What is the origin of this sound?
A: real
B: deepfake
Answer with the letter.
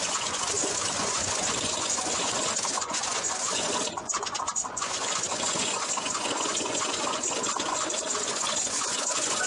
B